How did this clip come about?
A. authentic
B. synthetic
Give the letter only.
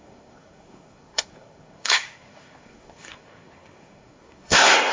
B